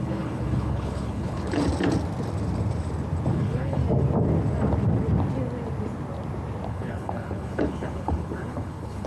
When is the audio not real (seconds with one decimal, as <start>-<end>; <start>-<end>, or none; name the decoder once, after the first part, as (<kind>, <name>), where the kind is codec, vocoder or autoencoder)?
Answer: 0.0-1.6 (codec, HILCodec); 3.3-3.8; 6.7-9.1

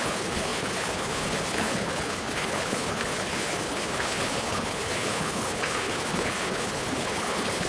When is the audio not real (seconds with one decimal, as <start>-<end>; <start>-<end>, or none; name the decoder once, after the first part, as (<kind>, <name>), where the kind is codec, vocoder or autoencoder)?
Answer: 0.0-7.7 (codec, HILCodec)

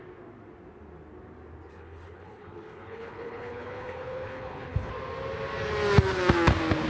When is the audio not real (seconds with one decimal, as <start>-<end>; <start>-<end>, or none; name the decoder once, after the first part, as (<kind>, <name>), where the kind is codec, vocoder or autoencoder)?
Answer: 1.7-4.9 (codec, HILCodec)

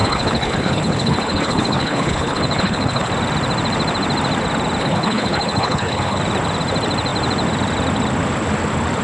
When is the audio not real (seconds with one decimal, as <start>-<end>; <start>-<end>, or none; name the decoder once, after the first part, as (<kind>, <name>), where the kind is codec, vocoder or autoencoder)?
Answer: 0.0-3.1 (codec, HILCodec); 4.8-6.2